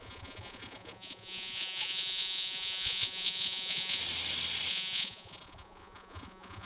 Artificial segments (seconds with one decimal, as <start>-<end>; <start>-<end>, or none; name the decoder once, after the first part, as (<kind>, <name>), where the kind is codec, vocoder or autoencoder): 0.0-4.0 (vocoder, Vocos); 4.7-6.7